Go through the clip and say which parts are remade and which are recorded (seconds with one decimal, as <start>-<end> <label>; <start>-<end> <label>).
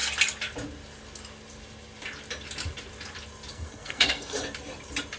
0.0-3.5 recorded; 3.5-4.4 remade; 4.4-5.2 recorded